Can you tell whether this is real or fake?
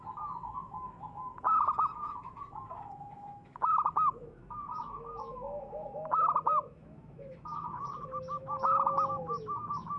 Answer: fake